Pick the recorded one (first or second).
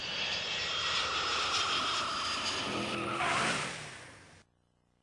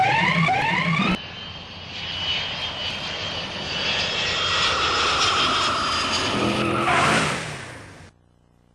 second